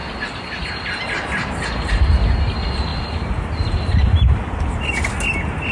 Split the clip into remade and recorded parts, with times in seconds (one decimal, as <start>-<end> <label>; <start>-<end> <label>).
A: 0.0-2.9 recorded; 2.9-5.1 remade; 5.1-5.7 recorded

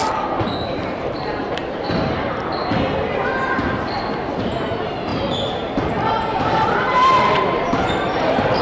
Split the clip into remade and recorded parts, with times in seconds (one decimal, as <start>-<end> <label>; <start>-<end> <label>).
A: 0.0-0.6 recorded; 0.6-1.6 remade; 1.6-4.6 recorded; 4.6-5.1 remade; 5.1-6.2 recorded; 6.2-8.6 remade

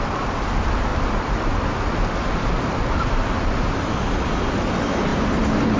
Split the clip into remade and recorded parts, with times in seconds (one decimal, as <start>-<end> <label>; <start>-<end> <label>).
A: 0.0-5.1 recorded; 5.1-5.8 remade